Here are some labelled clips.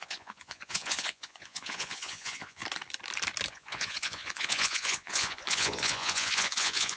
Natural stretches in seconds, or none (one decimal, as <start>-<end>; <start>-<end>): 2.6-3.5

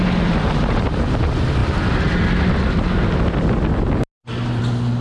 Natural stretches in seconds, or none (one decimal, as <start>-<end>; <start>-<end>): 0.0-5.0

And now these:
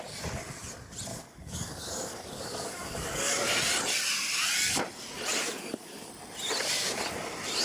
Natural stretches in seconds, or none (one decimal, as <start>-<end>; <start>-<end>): 0.0-1.1; 3.5-5.4; 6.1-7.6

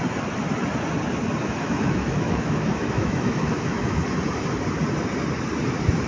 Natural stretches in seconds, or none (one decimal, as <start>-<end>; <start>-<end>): 0.0-1.4; 4.0-6.1